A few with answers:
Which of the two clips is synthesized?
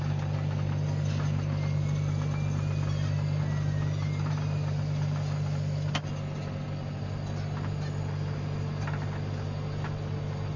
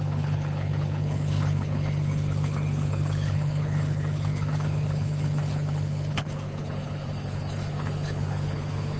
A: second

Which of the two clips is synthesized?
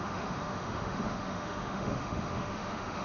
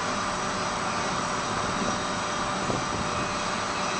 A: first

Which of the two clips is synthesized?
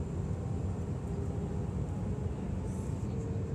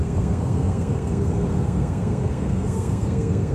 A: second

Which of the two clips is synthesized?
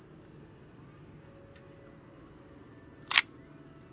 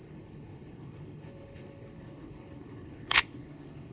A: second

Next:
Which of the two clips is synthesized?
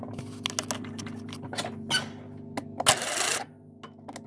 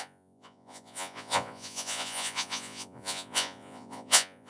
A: second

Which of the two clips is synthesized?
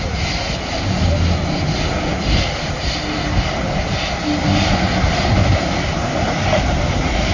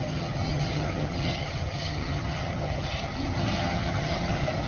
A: second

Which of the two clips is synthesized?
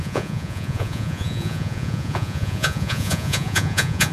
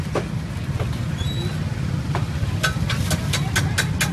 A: first